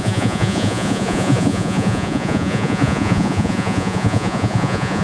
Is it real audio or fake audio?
fake